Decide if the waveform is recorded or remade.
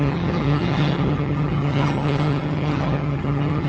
remade